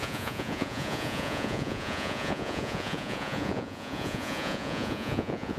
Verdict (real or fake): fake